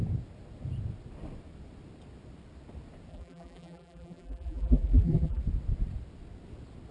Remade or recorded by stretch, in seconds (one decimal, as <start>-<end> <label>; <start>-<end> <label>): 0.0-3.1 recorded; 3.1-5.4 remade; 5.4-6.9 recorded